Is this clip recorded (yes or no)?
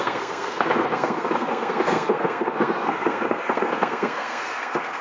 no